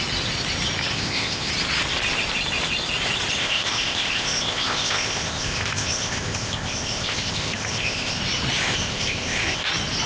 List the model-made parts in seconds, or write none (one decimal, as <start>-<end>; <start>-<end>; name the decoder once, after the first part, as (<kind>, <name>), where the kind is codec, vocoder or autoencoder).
0.9-1.5 (codec, ZipCodec); 3.4-8.2; 8.6-9.7